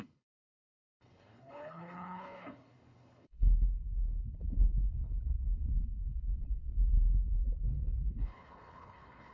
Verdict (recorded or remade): remade